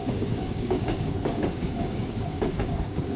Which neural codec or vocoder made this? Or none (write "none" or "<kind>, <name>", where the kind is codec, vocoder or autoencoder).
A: codec, DAC